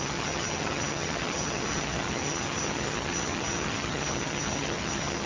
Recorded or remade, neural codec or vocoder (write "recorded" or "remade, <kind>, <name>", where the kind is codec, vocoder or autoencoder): remade, vocoder, HiFi-GAN